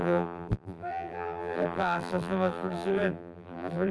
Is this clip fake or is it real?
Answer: fake